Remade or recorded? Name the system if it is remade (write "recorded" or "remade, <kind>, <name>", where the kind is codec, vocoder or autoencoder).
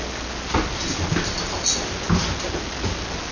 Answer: recorded